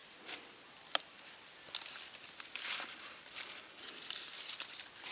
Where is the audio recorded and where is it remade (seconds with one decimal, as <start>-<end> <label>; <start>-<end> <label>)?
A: 0.0-5.1 recorded